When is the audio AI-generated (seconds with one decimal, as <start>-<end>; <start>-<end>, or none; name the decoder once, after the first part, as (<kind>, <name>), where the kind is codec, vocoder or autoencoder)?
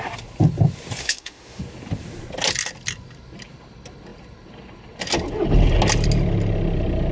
1.0-1.6 (autoencoder, DAC-VAE)